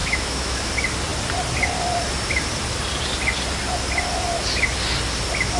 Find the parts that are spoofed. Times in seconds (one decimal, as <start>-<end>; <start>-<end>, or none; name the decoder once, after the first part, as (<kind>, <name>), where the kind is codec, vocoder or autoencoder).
0.0-0.7 (autoencoder, DAC-VAE)